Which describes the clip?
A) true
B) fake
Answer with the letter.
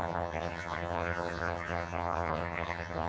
B